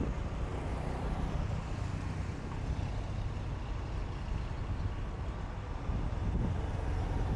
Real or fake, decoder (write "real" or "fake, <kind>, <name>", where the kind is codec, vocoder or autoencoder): real